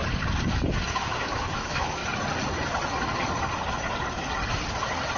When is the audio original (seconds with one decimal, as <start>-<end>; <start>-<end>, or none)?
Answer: 0.0-0.9; 2.0-5.2